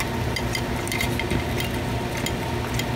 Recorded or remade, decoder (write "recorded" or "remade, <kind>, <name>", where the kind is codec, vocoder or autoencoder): recorded